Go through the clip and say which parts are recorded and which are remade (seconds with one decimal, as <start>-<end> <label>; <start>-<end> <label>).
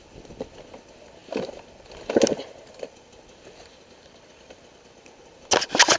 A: 0.0-6.0 recorded